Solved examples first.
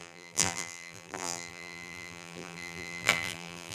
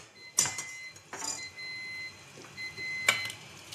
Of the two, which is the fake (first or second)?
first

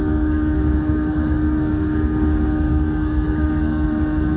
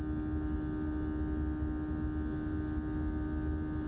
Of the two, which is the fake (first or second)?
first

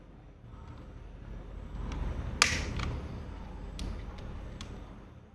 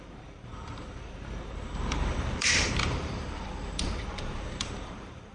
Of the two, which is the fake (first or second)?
second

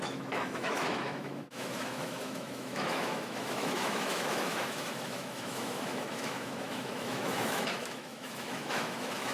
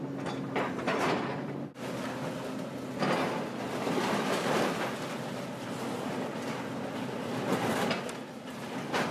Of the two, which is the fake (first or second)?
first